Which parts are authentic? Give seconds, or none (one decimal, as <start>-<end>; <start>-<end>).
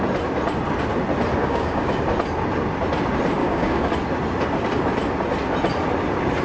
0.0-1.4; 1.9-3.4; 3.9-6.4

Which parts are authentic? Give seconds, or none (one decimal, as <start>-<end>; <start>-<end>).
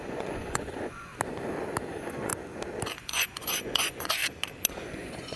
1.1-1.9; 2.3-3.0; 4.2-4.7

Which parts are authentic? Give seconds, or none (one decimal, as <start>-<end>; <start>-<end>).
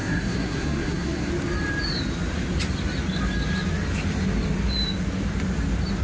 1.3-6.0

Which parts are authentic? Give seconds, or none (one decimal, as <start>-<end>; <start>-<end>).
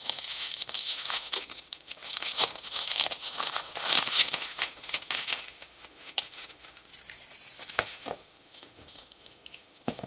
6.9-7.7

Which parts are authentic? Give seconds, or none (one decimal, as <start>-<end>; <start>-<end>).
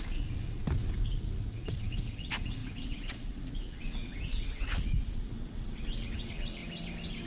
6.6-7.3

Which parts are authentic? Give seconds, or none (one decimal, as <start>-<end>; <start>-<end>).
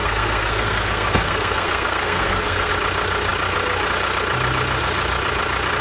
2.7-5.8